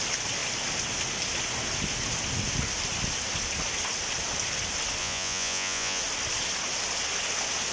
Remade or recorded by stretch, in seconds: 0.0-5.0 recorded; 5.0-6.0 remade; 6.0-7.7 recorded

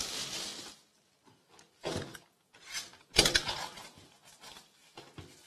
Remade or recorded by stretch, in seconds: 0.0-2.1 recorded; 2.1-4.5 remade; 4.5-5.5 recorded

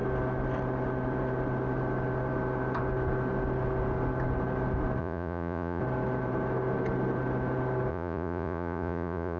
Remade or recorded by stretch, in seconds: 0.0-5.0 recorded; 5.0-5.8 remade; 5.8-7.9 recorded; 7.9-9.4 remade

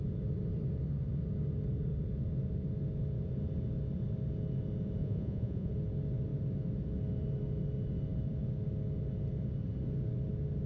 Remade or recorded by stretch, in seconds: 0.0-5.0 recorded; 5.0-5.7 remade; 5.7-10.7 recorded

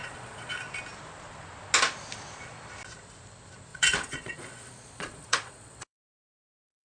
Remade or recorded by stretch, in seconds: 0.0-0.5 remade; 0.5-3.7 recorded; 3.7-6.8 remade

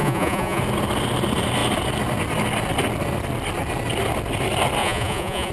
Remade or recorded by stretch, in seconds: 0.0-0.6 remade; 0.6-4.8 recorded; 4.8-5.5 remade

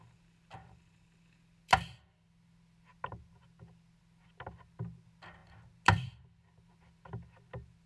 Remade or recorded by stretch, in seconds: 0.0-7.9 recorded

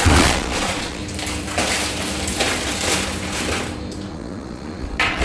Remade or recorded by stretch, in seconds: 0.0-1.0 remade; 1.0-4.1 recorded; 4.1-5.2 remade